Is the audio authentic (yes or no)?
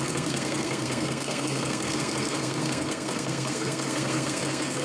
no